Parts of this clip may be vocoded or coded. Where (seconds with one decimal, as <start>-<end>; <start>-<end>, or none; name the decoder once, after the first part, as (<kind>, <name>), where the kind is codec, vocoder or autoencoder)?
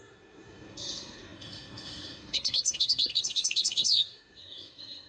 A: 0.0-5.1 (codec, SNAC)